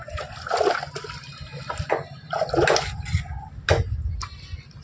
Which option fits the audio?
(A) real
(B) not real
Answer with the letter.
A